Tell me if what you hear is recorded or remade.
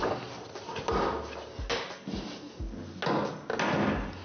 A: recorded